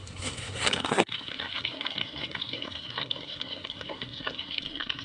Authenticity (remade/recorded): remade